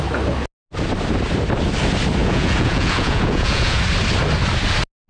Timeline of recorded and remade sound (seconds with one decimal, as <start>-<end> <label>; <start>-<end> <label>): 0.0-2.2 recorded; 2.2-3.8 remade; 3.8-5.1 recorded